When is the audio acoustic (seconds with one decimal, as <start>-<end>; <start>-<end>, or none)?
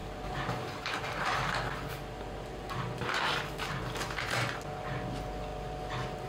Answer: 0.0-6.3